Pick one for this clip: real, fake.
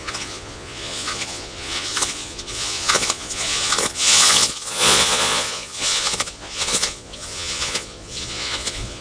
fake